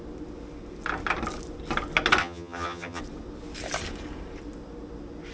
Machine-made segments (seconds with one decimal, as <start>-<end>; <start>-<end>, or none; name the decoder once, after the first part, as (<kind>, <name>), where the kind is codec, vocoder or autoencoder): 2.2-3.0 (vocoder, HiFi-GAN)